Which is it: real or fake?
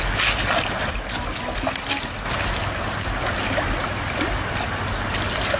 real